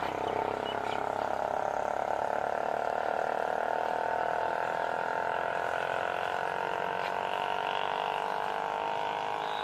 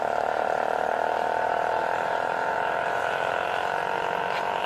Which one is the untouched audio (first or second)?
first